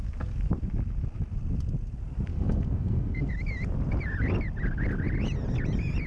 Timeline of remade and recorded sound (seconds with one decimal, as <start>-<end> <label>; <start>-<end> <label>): 0.0-2.3 recorded; 2.3-3.3 remade; 3.3-6.1 recorded